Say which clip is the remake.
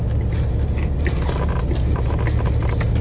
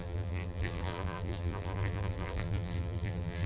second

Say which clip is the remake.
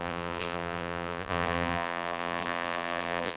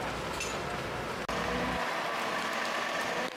first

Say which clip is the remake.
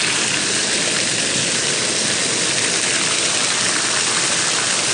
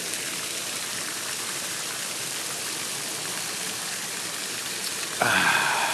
second